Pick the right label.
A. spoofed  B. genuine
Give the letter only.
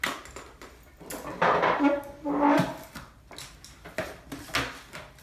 B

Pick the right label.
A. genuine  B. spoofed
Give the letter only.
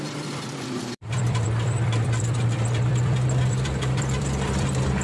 B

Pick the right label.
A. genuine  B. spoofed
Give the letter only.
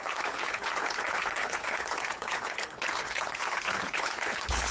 B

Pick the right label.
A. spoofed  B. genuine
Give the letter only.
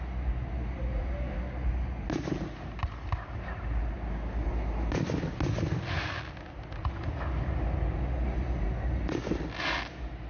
B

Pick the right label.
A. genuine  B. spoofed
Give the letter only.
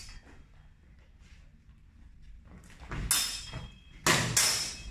A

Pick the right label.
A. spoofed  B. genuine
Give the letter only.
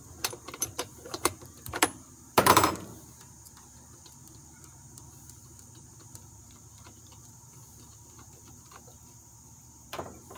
A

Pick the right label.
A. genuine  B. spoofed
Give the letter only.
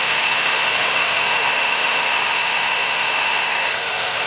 B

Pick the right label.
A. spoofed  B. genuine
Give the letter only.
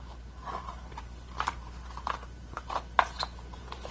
A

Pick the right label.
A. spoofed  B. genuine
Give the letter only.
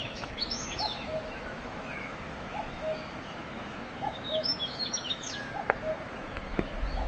A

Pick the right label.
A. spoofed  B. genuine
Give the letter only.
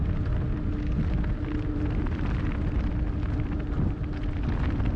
B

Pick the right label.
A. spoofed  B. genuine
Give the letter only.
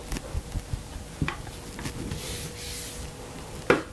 B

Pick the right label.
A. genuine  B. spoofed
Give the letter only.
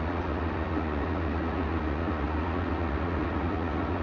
B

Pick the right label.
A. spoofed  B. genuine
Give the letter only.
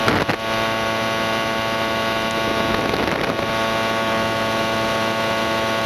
B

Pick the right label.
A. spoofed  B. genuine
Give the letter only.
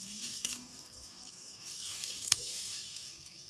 A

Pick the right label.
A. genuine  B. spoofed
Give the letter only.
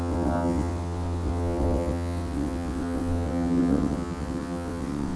B